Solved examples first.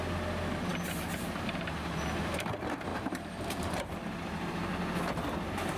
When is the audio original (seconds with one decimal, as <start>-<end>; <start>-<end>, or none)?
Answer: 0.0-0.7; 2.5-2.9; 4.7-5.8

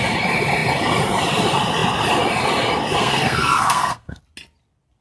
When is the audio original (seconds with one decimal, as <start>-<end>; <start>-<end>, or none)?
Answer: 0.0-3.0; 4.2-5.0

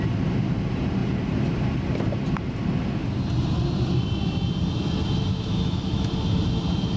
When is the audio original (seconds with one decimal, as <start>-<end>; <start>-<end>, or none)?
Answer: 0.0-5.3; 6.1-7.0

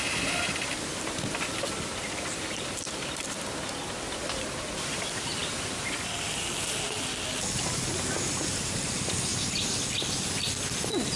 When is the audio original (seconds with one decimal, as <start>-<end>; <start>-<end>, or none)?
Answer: 1.5-2.4; 5.4-8.0; 9.3-11.2

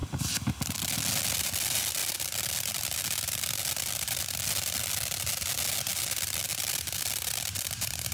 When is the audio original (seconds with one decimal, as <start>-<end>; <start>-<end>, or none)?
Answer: 0.0-8.1

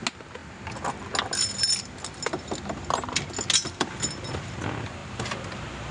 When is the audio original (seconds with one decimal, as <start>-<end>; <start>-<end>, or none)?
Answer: 0.0-5.9